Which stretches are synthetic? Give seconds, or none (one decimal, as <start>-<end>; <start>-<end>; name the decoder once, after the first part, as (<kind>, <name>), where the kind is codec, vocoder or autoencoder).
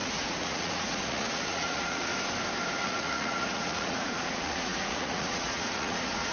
0.0-2.1 (vocoder, Vocos); 2.8-6.3